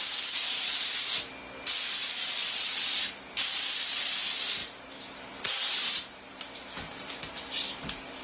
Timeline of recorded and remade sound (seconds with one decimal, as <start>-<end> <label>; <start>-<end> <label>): 0.0-2.4 recorded; 2.4-3.6 remade; 3.6-4.6 recorded; 4.6-8.2 remade